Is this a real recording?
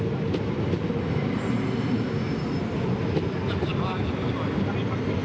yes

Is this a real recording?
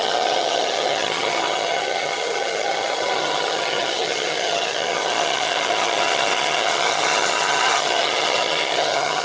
no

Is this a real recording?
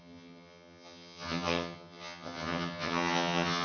no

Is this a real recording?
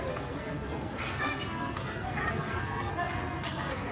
no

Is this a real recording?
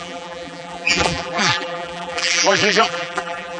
no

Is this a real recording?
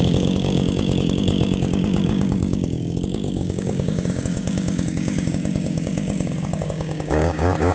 no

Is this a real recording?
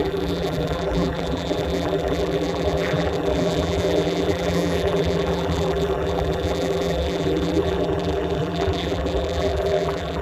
no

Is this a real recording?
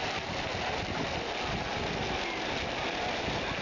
yes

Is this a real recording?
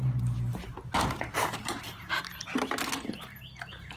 yes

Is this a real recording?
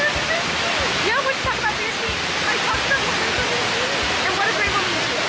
yes